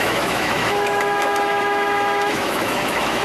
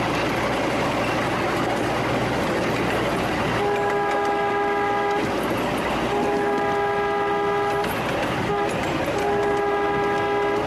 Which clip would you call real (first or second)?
second